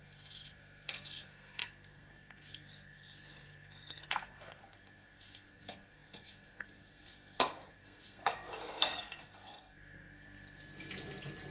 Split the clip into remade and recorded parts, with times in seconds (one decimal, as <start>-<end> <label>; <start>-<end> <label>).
0.0-10.6 remade; 10.6-11.5 recorded